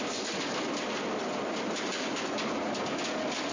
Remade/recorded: recorded